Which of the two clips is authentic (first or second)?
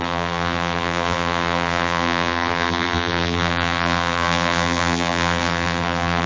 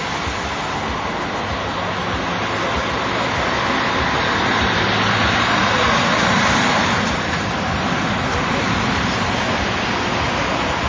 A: second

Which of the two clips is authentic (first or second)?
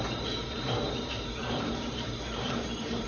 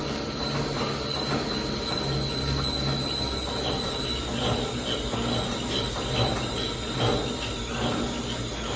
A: second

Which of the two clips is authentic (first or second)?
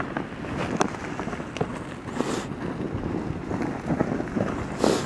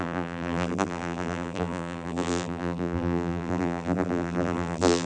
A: first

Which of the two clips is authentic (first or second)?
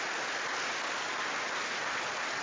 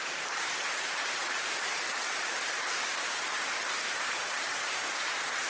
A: first